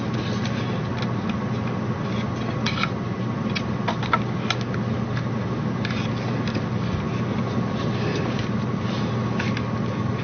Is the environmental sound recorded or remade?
recorded